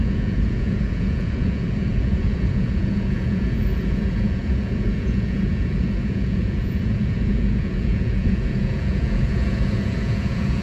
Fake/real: fake